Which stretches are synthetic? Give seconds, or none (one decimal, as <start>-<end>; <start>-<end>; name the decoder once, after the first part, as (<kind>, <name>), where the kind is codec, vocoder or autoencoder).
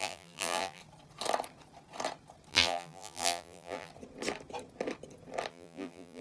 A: 0.0-0.8 (vocoder, BigVGAN v2); 2.5-3.9; 5.5-6.2